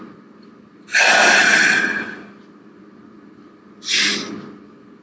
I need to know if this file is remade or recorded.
recorded